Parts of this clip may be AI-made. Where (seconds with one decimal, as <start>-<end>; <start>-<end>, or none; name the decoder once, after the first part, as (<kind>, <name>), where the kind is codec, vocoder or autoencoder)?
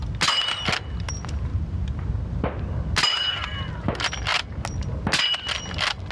none